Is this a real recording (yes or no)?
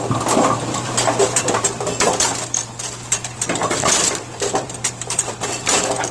no